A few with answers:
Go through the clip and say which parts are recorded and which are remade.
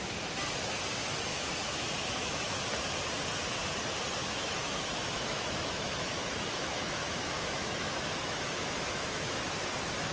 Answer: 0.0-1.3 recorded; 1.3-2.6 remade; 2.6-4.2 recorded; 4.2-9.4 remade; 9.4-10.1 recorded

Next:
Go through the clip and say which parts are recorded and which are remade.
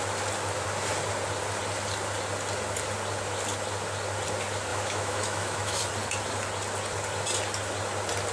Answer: 0.0-4.7 recorded; 4.7-5.8 remade; 5.8-8.3 recorded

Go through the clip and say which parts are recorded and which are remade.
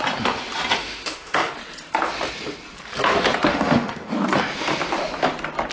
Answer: 0.0-0.7 recorded; 0.7-1.5 remade; 1.5-3.5 recorded; 3.5-4.1 remade; 4.1-5.7 recorded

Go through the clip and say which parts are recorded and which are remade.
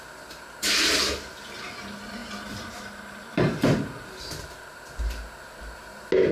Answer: 0.0-6.3 recorded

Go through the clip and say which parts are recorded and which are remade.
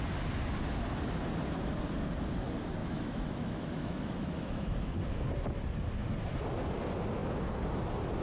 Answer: 0.0-2.8 recorded; 2.8-4.9 remade; 4.9-8.2 recorded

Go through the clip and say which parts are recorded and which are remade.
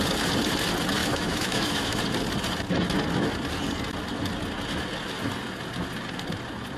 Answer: 0.0-1.0 recorded; 1.0-2.0 remade; 2.0-6.8 recorded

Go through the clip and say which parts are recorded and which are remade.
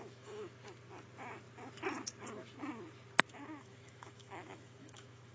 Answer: 0.0-0.4 remade; 0.4-3.6 recorded; 3.6-5.3 remade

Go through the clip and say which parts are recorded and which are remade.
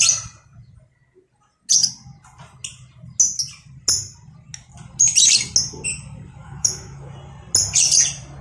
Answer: 0.0-6.4 recorded; 6.4-7.1 remade; 7.1-8.4 recorded